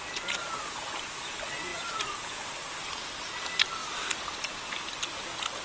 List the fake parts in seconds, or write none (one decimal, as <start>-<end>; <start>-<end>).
1.7-2.4

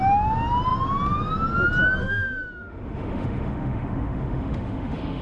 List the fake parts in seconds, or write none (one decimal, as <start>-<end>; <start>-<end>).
2.0-5.2

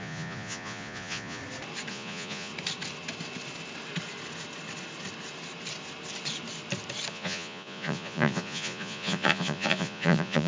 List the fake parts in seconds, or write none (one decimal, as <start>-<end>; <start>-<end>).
0.0-1.4; 1.9-2.5; 7.1-10.5

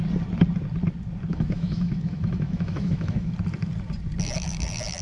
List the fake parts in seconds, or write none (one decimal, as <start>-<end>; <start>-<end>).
1.3-3.3

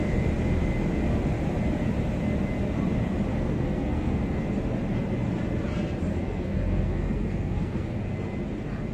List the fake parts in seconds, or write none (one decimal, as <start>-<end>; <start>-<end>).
3.3-4.2; 6.1-8.0

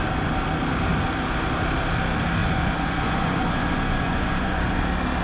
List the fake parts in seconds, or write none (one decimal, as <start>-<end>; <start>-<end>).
2.4-4.8